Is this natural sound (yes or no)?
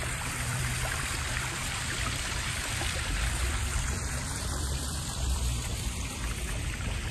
no